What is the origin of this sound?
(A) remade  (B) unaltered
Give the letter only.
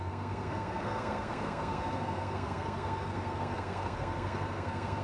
A